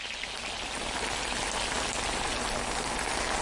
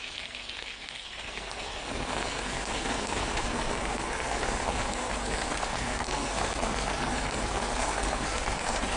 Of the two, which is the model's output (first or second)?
second